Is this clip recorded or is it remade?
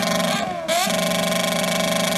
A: recorded